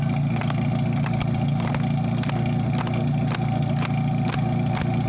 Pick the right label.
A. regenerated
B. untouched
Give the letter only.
B